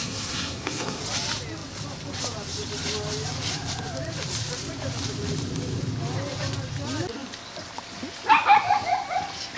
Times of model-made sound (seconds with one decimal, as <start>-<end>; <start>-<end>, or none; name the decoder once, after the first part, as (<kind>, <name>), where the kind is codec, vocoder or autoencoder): 0.0-1.0 (codec, SNAC)